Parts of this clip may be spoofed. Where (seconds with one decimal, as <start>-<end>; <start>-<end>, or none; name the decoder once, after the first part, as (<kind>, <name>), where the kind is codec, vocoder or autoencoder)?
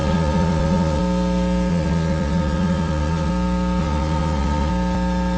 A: 0.0-1.0 (vocoder, Vocos); 1.7-3.3; 3.8-4.7